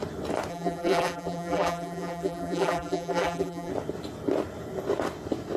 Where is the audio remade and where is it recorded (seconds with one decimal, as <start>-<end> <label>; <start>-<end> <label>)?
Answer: 0.0-0.5 recorded; 0.5-3.7 remade; 3.7-5.6 recorded